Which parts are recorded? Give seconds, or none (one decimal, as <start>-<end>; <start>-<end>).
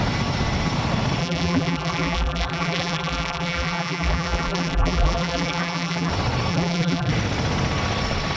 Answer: 0.0-1.2; 6.1-6.5; 7.1-8.4